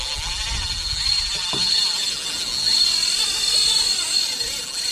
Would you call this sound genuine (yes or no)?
yes